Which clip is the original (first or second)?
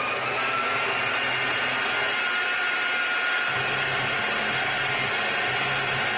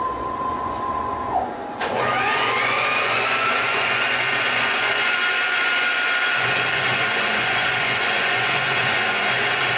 first